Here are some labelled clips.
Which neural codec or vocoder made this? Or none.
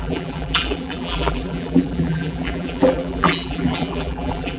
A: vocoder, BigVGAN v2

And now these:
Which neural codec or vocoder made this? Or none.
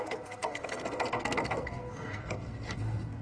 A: codec, SNAC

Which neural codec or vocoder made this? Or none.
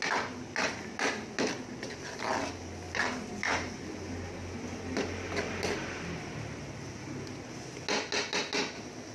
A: none